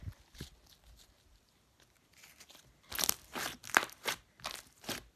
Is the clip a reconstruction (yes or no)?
no